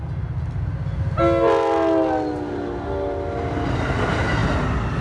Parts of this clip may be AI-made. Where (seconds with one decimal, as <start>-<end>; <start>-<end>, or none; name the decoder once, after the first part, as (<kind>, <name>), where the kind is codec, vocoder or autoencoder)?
none